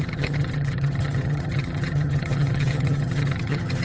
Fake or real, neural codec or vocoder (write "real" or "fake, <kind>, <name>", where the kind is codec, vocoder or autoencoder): fake, vocoder, HiFi-GAN